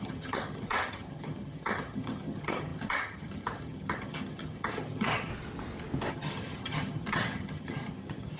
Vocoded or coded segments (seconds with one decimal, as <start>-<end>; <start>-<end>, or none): 0.0-5.3; 6.1-8.4